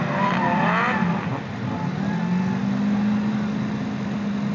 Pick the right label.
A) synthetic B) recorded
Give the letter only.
B